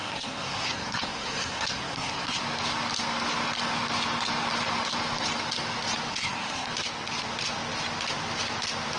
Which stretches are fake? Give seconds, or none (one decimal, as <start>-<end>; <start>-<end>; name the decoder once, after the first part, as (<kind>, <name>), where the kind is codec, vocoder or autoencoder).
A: 0.0-2.4 (codec, SNAC); 6.1-6.7